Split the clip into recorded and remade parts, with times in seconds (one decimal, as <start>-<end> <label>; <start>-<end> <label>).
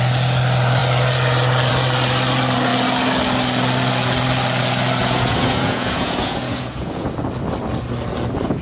0.0-5.0 recorded; 5.0-7.2 remade; 7.2-8.6 recorded